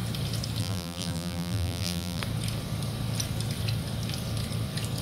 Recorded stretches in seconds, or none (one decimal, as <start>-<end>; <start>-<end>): 0.0-0.6; 2.2-5.0